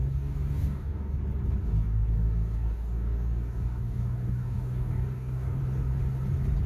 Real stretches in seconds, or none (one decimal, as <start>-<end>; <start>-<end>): 1.2-1.6; 5.6-6.7